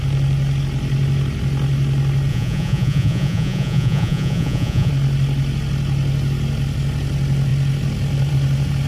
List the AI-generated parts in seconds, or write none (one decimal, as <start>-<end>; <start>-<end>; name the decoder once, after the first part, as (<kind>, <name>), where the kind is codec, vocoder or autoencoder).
2.3-4.9 (vocoder, Vocos)